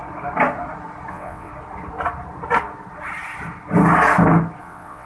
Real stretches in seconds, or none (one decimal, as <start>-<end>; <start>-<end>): 0.0-1.1; 1.5-4.6